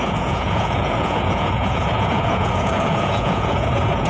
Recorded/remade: remade